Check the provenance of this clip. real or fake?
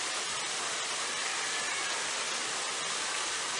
real